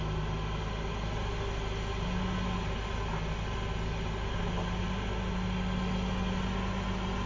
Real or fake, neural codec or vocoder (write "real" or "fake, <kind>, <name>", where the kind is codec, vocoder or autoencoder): real